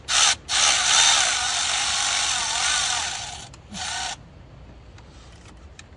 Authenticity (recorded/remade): recorded